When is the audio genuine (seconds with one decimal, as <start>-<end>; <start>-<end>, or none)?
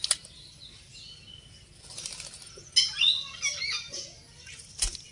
0.0-5.1